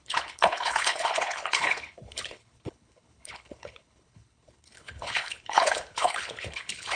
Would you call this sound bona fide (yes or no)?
no